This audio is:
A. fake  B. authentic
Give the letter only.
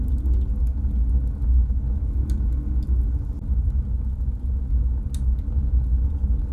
B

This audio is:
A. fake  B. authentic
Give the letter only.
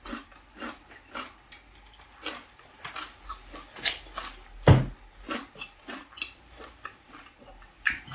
B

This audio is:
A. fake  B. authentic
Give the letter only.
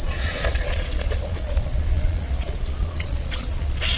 A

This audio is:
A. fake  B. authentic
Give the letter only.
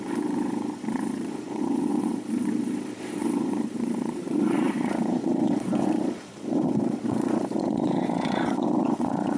A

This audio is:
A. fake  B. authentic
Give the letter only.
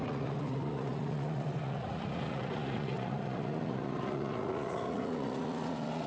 A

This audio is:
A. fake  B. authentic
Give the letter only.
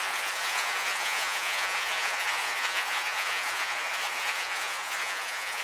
A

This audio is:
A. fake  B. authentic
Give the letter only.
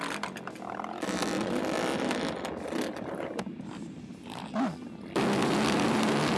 B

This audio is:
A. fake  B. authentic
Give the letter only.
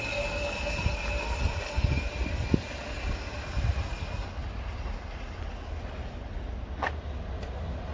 B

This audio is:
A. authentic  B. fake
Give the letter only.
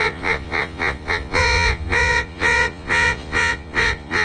B